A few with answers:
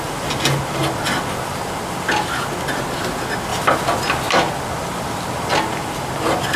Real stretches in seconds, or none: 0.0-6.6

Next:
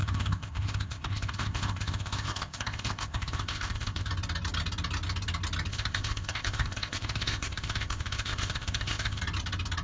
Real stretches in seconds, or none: 4.1-5.7; 9.2-9.8

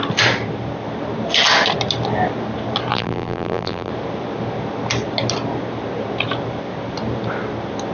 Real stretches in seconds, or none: 0.0-2.9; 3.9-7.9

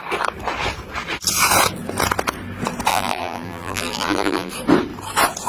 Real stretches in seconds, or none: 0.0-2.9; 4.5-5.5